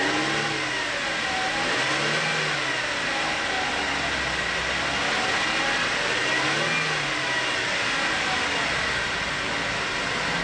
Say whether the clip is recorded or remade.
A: recorded